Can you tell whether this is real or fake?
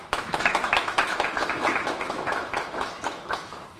fake